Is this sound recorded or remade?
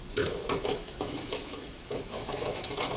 remade